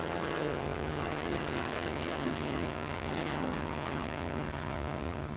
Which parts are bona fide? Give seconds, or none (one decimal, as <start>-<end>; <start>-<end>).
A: none